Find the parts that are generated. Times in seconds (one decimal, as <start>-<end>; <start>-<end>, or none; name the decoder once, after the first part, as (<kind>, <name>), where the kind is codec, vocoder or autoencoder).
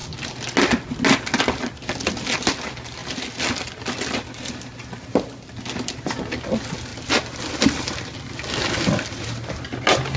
none